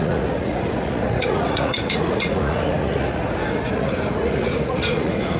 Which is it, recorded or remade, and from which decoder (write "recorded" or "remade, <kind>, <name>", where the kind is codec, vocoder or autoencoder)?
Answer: remade, vocoder, Vocos